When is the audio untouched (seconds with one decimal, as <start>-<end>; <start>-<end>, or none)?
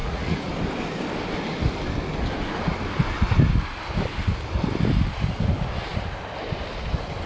0.5-7.3